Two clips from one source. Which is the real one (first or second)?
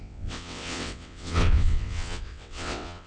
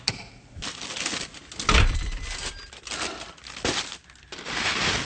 second